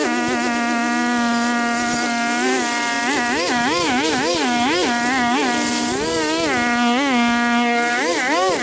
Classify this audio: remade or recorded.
recorded